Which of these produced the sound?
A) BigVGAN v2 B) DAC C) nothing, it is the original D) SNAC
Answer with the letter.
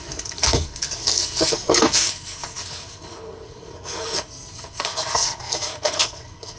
D